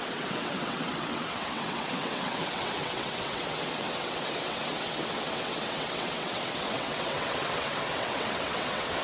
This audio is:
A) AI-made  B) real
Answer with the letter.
A